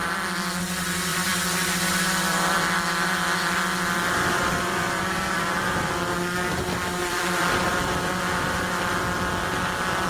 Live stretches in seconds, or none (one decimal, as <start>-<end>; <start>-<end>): 0.6-1.1; 5.9-7.0; 8.2-10.1